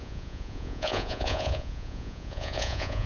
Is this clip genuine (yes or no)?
no